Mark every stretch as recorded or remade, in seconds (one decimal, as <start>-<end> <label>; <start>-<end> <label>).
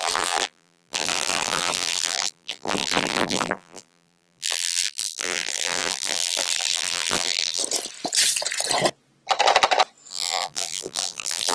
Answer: 0.0-7.6 remade; 7.6-10.1 recorded; 10.1-11.5 remade